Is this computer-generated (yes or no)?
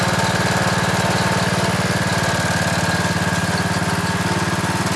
no